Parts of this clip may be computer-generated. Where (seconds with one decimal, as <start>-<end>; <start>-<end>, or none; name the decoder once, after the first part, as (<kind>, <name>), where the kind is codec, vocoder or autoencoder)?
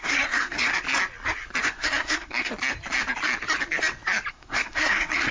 0.0-0.7 (codec, SNAC); 1.6-2.5; 4.3-5.3